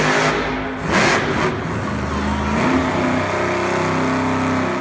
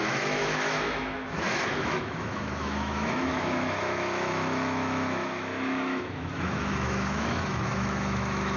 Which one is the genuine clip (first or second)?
first